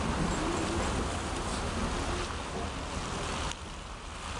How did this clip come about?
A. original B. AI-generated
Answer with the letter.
A